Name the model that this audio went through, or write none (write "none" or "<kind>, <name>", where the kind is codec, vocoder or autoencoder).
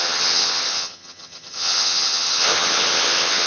vocoder, HiFi-GAN